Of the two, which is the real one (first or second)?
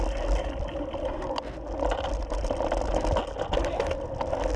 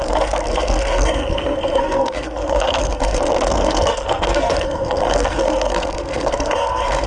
first